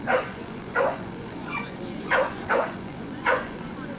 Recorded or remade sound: remade